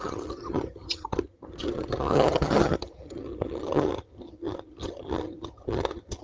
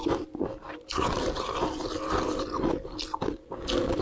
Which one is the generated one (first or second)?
first